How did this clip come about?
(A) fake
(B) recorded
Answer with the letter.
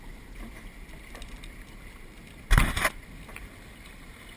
B